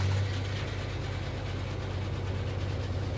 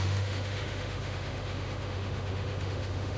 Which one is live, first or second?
first